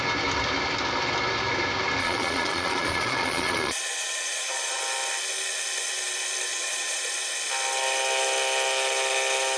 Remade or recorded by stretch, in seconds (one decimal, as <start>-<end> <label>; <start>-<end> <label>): 0.0-2.0 recorded; 2.0-4.8 remade; 4.8-6.5 recorded; 6.5-7.0 remade; 7.0-9.6 recorded